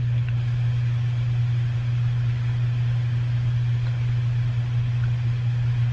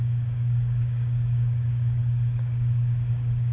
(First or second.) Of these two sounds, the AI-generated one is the second